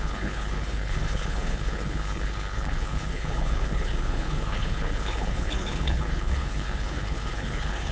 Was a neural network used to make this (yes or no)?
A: yes